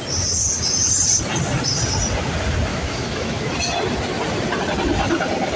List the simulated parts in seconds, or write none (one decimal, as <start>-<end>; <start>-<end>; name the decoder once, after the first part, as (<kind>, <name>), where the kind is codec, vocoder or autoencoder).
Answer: 2.7-3.5 (autoencoder, DAC-VAE)